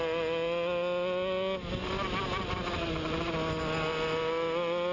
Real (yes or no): yes